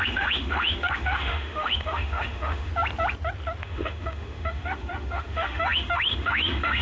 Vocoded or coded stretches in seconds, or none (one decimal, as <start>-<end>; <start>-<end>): 0.0-2.7; 3.6-6.8